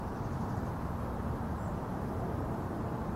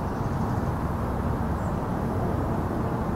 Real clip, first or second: second